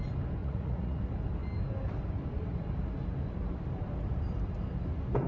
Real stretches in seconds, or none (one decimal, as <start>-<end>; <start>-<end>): 0.0-0.4; 1.0-5.3